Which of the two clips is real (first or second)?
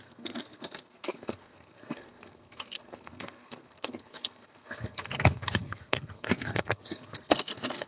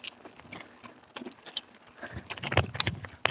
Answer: second